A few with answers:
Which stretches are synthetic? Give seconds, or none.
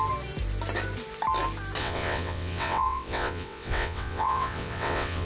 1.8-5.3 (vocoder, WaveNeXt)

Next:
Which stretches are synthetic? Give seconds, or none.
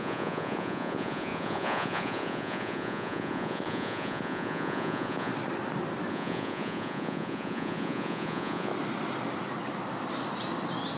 0.0-5.3 (vocoder, Vocos); 6.1-8.7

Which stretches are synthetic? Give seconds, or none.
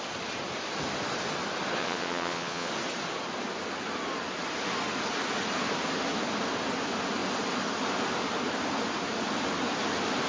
1.8-2.7 (vocoder, Vocos)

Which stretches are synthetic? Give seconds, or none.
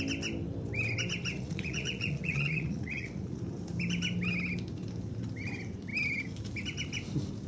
1.3-3.4 (vocoder, Vocos)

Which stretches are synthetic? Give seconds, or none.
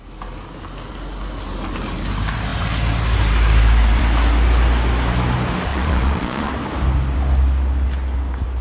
5.7-6.5 (vocoder, Vocos)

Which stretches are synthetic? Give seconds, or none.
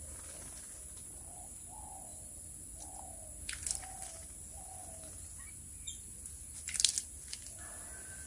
2.1-2.9 (vocoder, BigVGAN v2)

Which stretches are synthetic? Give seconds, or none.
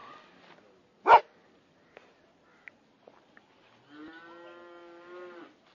none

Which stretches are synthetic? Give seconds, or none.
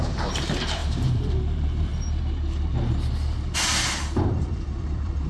0.0-1.9 (vocoder, BigVGAN v2); 4.2-5.3